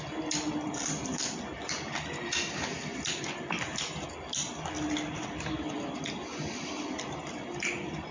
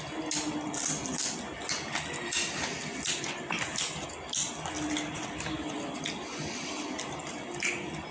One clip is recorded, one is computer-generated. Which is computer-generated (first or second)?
first